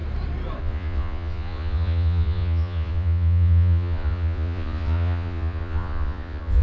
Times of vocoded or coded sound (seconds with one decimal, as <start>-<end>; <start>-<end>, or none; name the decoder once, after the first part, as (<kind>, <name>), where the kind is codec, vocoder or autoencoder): 0.6-6.6 (vocoder, Vocos)